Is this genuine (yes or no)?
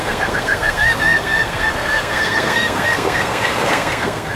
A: no